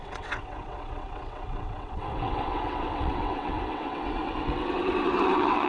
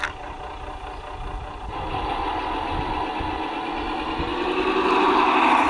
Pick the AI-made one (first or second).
first